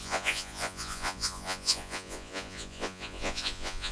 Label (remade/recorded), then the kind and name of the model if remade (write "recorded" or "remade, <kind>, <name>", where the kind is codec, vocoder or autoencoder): remade, vocoder, Vocos